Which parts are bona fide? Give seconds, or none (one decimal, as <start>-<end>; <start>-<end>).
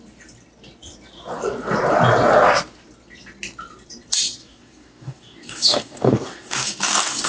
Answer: 0.0-4.4